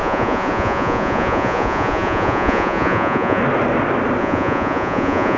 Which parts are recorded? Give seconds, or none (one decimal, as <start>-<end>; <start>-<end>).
3.4-4.2